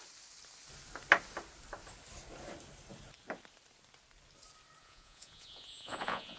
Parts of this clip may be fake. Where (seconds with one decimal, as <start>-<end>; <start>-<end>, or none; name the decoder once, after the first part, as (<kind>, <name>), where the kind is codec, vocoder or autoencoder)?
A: 4.8-6.4 (vocoder, Vocos)